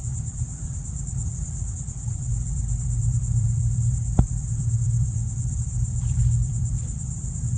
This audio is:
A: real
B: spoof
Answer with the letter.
B